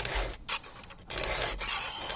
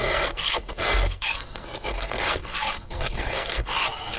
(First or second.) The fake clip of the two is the second